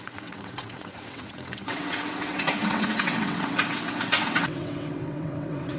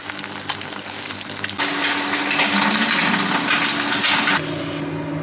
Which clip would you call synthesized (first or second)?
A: first